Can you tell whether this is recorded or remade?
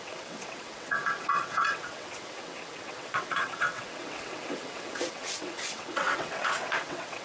remade